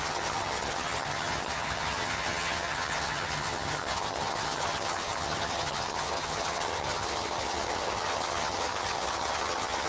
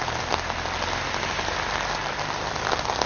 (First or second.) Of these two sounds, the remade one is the first